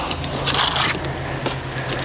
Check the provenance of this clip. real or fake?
real